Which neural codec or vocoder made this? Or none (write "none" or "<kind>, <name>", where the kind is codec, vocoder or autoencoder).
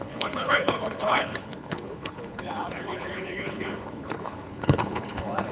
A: codec, HILCodec